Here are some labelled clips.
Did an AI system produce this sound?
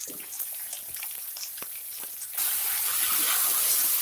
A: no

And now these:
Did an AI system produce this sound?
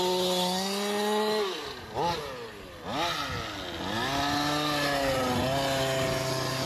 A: no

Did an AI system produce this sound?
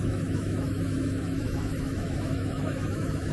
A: yes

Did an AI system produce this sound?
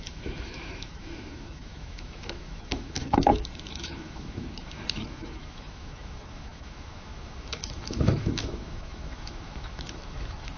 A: yes